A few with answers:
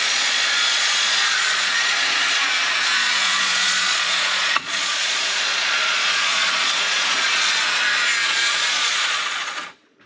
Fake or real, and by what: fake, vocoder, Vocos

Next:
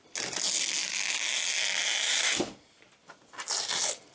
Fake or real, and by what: real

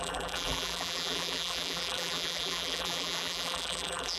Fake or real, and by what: fake, vocoder, BigVGAN v2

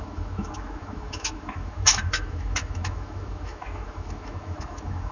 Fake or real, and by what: fake, autoencoder, DAC-VAE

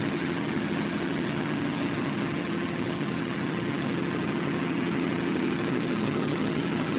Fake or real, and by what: fake, vocoder, HiFi-GAN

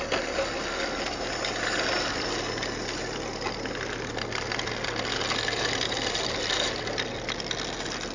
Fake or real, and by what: real